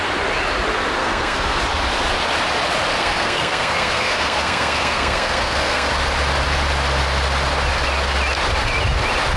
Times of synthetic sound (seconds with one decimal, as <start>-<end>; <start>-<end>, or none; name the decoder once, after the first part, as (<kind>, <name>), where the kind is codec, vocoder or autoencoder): 1.0-1.6 (codec, SNAC); 3.0-5.9